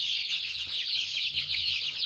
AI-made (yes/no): yes